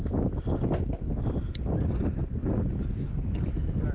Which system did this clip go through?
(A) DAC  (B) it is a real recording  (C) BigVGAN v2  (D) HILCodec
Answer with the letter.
B